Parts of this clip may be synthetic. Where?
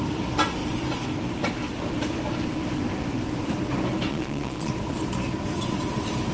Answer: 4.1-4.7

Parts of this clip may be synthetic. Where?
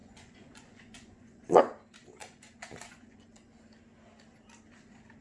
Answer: 0.0-1.6; 2.2-3.3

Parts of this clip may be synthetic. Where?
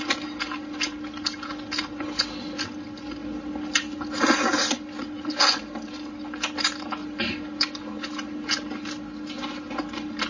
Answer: none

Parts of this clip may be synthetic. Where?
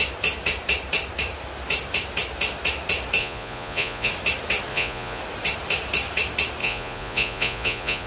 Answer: 3.2-4.1; 4.7-5.2; 6.6-8.1